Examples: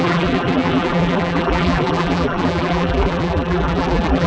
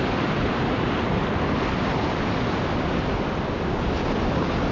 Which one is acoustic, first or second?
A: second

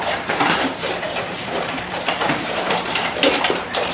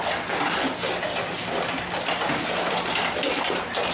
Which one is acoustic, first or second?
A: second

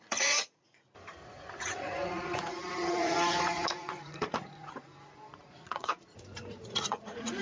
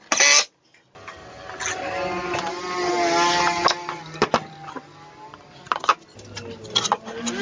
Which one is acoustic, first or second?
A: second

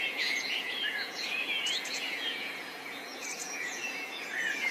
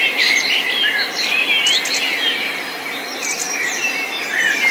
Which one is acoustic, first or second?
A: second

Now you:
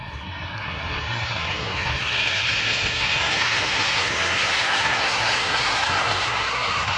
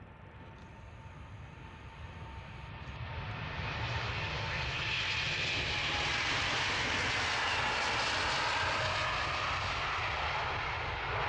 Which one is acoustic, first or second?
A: second